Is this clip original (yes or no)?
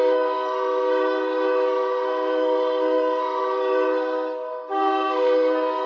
no